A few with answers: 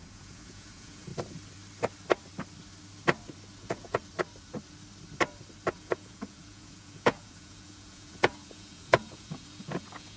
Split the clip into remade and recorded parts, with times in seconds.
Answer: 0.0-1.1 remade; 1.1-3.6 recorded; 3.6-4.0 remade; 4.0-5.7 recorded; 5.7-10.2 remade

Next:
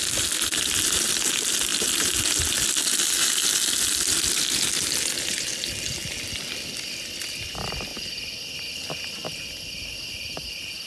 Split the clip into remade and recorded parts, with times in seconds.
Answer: 0.0-10.9 recorded

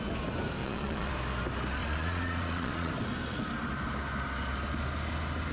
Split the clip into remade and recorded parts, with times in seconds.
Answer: 0.0-0.6 recorded; 0.6-1.1 remade; 1.1-1.8 recorded; 1.8-2.9 remade; 2.9-5.5 recorded